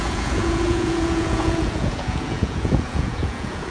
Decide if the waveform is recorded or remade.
remade